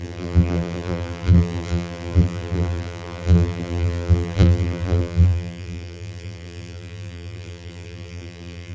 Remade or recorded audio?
remade